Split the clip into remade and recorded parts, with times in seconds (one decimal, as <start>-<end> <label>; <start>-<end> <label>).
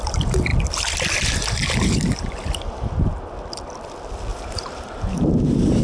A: 0.0-4.3 recorded; 4.3-5.8 remade